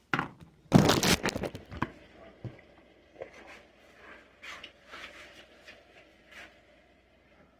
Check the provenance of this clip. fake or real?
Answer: real